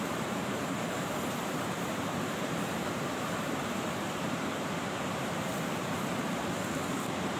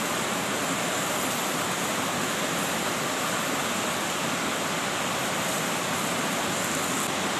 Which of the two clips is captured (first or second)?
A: second